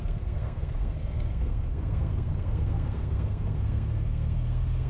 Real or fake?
fake